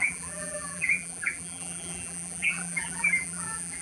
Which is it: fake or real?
fake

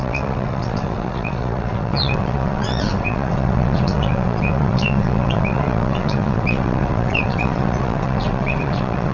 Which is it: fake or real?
fake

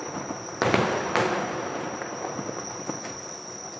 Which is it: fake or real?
real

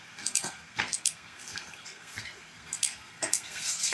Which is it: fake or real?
fake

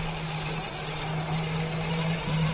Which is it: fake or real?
real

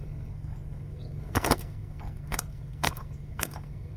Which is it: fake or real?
fake